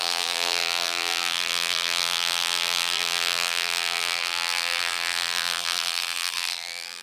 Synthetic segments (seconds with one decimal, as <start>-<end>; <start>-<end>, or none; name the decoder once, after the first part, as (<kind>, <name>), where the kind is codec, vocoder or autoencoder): 0.0-7.0 (vocoder, BigVGAN v2)